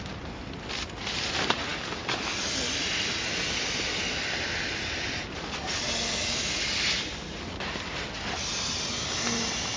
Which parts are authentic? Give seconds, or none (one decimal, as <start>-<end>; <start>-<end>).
0.0-9.8